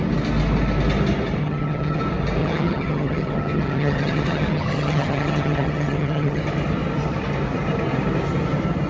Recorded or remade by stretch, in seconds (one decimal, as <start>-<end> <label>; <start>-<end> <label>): 0.0-1.4 recorded; 1.4-2.0 remade; 2.0-2.4 recorded; 2.4-6.4 remade; 6.4-8.9 recorded